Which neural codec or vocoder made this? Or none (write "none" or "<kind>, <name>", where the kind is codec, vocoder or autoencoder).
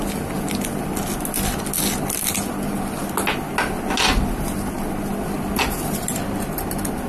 none